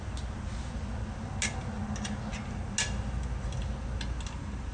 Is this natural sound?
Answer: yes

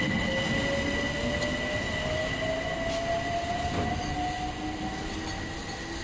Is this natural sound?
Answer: yes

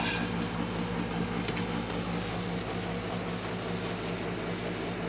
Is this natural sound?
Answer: yes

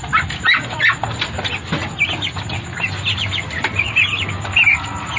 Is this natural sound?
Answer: yes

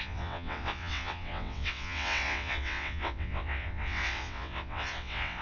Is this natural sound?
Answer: no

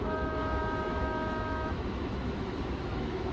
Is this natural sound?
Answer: no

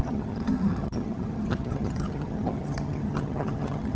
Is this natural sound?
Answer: no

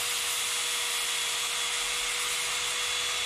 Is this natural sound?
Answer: yes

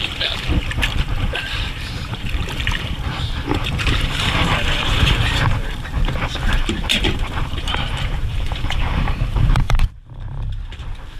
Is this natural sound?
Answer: no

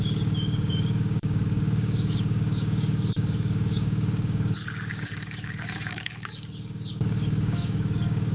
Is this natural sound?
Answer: no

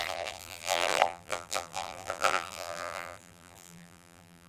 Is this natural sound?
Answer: no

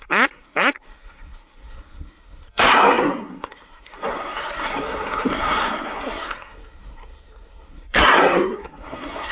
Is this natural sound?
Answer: no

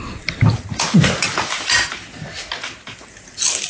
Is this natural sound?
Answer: yes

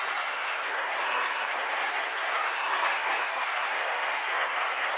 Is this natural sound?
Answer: no